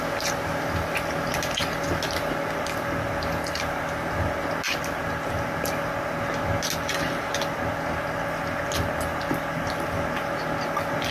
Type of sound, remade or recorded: recorded